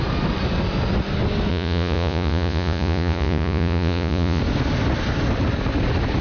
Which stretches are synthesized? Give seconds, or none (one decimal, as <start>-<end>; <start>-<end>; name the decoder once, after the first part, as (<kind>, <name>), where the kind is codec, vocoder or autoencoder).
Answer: 1.5-4.4 (vocoder, Vocos)